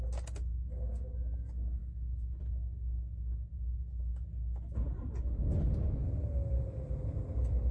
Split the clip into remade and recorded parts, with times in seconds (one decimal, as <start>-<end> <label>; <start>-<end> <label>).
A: 0.0-7.7 recorded